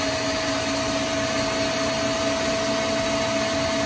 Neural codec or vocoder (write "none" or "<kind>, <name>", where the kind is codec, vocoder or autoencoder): none